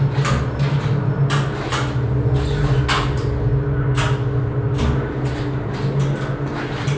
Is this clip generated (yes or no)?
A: no